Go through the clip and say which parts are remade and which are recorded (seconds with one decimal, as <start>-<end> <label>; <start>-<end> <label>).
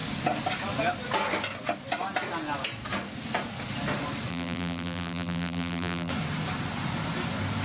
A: 0.0-4.3 recorded; 4.3-6.1 remade; 6.1-7.6 recorded